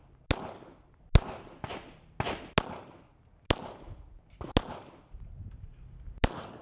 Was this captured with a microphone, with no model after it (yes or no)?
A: yes